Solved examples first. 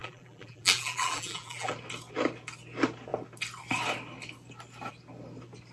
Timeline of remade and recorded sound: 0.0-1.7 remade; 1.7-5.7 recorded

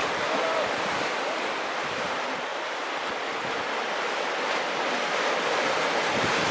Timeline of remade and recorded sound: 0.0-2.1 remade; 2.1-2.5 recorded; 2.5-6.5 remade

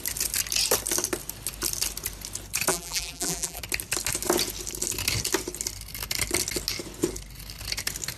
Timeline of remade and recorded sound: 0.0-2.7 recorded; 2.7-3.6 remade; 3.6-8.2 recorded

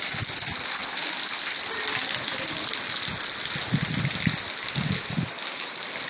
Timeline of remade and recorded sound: 0.0-6.1 recorded

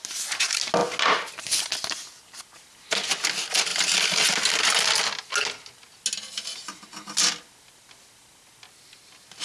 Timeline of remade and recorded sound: 0.0-9.4 recorded

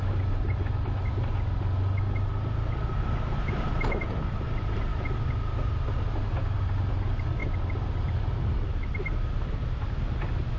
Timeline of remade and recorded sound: 0.0-10.6 recorded

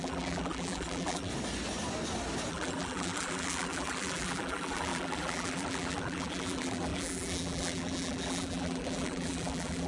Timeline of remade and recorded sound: 0.0-1.3 remade; 1.3-2.5 recorded; 2.5-9.9 remade